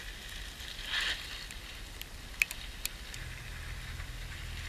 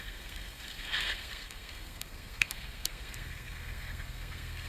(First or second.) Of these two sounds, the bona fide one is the first